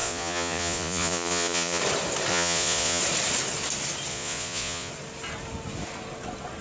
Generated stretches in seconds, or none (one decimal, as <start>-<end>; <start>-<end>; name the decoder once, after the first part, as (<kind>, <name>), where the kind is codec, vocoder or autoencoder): 0.0-1.8 (vocoder, Vocos); 2.3-3.0; 4.1-4.9